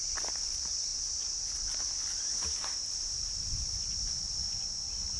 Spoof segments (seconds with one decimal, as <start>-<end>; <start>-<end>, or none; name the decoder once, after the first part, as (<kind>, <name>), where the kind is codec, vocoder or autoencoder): none